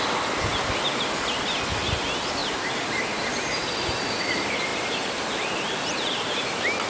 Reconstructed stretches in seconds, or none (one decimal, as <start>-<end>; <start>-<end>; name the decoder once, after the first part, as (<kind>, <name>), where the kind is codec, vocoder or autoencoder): 2.4-3.5 (vocoder, BigVGAN v2); 4.7-6.4